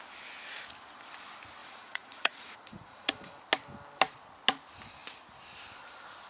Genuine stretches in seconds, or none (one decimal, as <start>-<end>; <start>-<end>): 0.0-1.6; 3.3-6.3